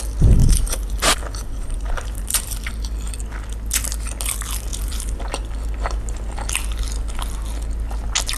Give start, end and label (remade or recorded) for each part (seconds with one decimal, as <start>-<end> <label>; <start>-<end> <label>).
0.0-0.4 recorded; 0.4-2.7 remade; 2.7-4.7 recorded; 4.7-5.2 remade; 5.2-8.4 recorded